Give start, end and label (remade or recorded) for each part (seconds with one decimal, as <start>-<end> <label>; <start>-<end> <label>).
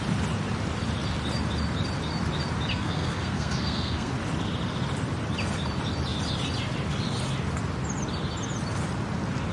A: 0.0-2.7 recorded; 2.7-4.1 remade; 4.1-9.5 recorded